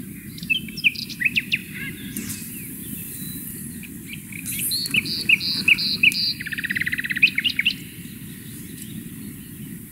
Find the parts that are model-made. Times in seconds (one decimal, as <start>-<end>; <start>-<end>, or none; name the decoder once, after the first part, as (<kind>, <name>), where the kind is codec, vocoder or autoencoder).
2.8-3.9 (vocoder, BigVGAN v2)